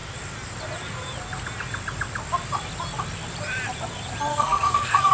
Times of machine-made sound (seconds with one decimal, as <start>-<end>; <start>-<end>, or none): 4.3-5.1